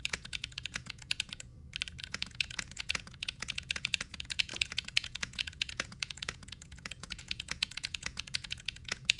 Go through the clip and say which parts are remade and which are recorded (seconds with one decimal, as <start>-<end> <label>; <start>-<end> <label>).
0.0-1.5 remade; 1.5-2.0 recorded; 2.0-9.2 remade